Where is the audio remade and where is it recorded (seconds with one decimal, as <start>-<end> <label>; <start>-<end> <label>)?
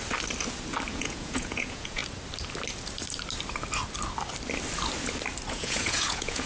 0.0-0.9 recorded; 0.9-2.0 remade; 2.0-5.5 recorded; 5.5-6.5 remade